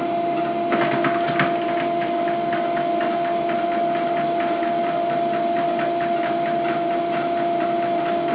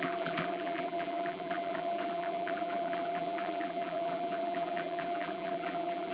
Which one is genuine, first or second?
first